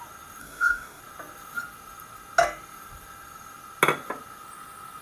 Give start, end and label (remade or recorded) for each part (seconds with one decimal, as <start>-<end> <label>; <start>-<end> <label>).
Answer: 0.0-0.4 recorded; 0.4-1.0 remade; 1.0-5.0 recorded

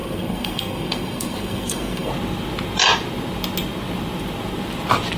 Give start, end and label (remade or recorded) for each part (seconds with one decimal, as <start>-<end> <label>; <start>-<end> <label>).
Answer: 0.0-2.1 remade; 2.1-5.2 recorded

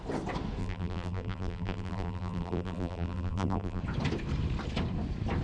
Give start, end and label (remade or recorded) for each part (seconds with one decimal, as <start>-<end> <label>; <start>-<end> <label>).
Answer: 0.0-0.6 recorded; 0.6-3.8 remade; 3.8-5.4 recorded

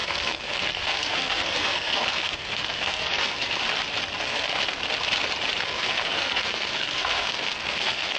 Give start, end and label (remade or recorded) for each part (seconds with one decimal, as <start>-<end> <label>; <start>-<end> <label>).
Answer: 0.0-3.6 remade; 3.6-4.2 recorded; 4.2-4.8 remade; 4.8-5.6 recorded; 5.6-8.2 remade

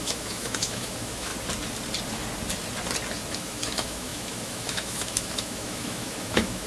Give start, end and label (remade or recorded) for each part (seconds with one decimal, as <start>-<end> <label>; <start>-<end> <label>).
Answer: 0.0-1.3 remade; 1.3-3.3 recorded; 3.3-6.7 remade

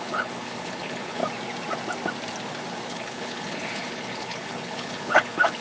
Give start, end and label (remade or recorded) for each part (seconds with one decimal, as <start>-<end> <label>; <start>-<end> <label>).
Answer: 0.0-1.2 remade; 1.2-2.9 recorded; 2.9-5.6 remade

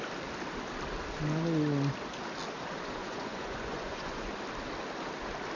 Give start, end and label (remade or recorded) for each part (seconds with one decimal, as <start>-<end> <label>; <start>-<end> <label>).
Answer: 0.0-3.0 recorded; 3.0-4.3 remade; 4.3-5.6 recorded